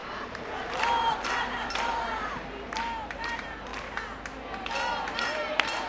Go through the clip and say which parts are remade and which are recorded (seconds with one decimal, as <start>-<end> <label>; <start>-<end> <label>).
0.0-3.7 remade; 3.7-4.7 recorded; 4.7-5.9 remade